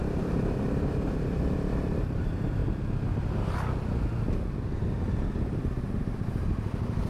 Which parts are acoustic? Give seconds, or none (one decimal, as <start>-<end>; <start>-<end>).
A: 2.6-5.9